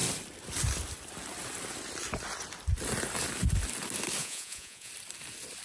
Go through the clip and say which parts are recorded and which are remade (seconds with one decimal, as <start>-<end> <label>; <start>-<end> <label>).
0.0-4.2 recorded; 4.2-4.9 remade; 4.9-5.6 recorded